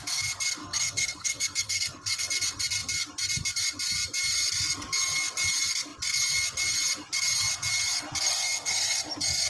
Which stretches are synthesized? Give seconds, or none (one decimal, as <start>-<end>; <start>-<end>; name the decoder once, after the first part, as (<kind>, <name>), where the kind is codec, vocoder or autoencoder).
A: 0.6-2.3 (codec, SNAC); 8.3-9.0